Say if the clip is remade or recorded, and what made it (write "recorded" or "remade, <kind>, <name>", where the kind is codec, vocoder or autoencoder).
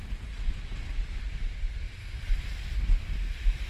recorded